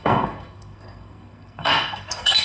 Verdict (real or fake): fake